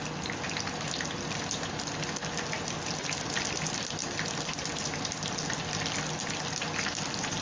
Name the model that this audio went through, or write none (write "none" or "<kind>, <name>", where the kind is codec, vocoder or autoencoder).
none